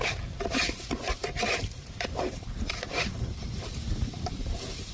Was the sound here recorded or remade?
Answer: remade